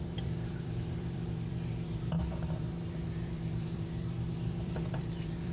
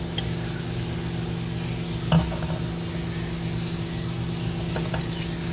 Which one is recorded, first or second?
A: second